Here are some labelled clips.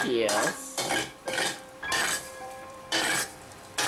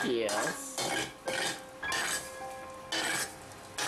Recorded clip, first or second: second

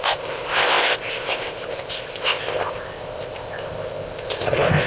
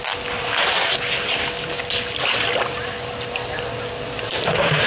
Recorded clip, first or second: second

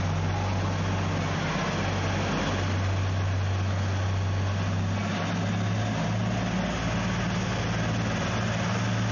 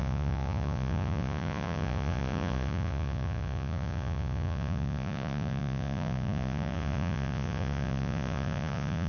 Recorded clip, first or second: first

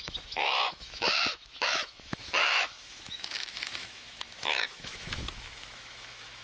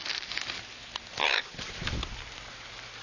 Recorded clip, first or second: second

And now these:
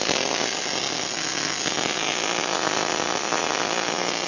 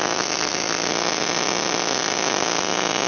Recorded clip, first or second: second